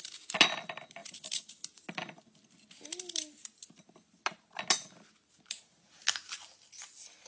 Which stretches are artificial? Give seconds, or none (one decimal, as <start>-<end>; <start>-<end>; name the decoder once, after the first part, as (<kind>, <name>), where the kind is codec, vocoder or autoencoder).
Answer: none